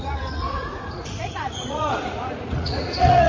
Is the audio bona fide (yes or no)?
no